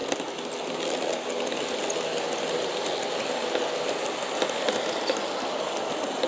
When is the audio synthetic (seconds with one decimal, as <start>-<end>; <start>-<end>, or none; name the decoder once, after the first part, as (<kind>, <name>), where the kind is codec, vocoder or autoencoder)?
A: none